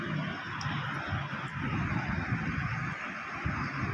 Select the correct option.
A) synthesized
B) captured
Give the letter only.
B